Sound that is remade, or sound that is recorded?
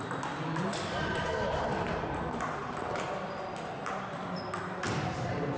recorded